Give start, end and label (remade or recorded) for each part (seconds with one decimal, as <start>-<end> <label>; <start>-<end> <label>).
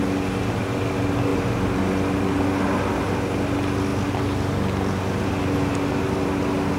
0.0-1.3 recorded; 1.3-1.8 remade; 1.8-6.8 recorded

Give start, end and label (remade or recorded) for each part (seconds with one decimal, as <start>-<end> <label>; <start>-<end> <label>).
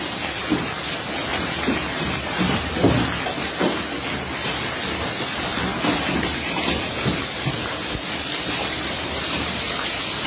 0.0-1.3 recorded; 1.3-2.7 remade; 2.7-9.2 recorded; 9.2-9.7 remade; 9.7-10.3 recorded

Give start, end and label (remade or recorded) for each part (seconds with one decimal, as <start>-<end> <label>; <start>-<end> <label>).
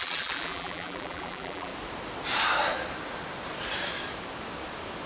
0.0-1.7 remade; 1.7-5.1 recorded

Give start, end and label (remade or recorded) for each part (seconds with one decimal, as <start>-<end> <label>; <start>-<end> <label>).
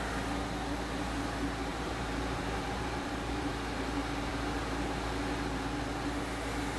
0.0-1.7 recorded; 1.7-3.5 remade; 3.5-6.8 recorded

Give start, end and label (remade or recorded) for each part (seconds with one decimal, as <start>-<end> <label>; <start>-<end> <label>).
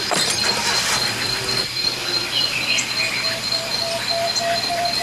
0.0-2.0 remade; 2.0-4.4 recorded; 4.4-5.0 remade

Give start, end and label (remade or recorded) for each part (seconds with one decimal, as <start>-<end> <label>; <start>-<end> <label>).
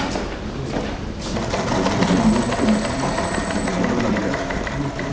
0.0-4.2 recorded; 4.2-5.1 remade